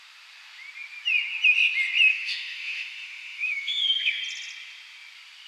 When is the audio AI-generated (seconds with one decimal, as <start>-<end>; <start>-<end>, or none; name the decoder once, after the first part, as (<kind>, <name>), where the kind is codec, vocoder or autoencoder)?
2.1-4.2 (autoencoder, DAC-VAE)